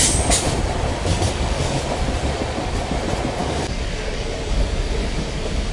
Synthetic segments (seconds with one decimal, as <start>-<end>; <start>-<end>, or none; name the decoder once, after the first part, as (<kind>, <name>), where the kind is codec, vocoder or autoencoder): 1.1-1.8 (codec, DAC); 3.4-5.7